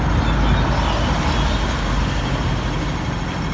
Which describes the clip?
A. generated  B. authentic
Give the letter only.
B